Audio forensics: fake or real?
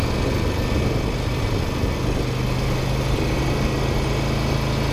real